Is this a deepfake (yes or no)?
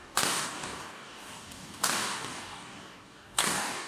yes